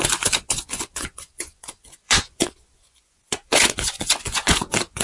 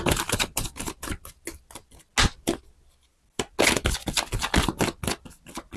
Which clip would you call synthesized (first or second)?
first